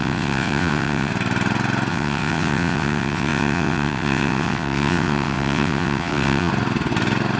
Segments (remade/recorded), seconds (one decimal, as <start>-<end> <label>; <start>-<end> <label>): 0.0-1.1 remade; 1.1-1.9 recorded; 1.9-6.5 remade; 6.5-7.4 recorded